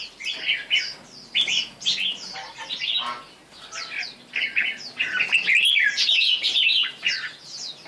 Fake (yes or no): no